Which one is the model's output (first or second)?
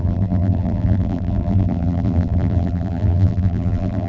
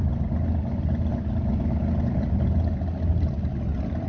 first